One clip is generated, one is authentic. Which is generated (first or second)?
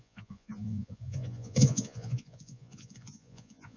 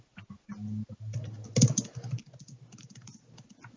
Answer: first